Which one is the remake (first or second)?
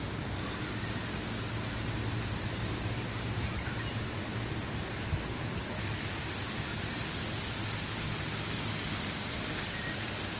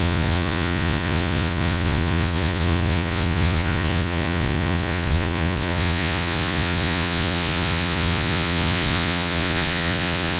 second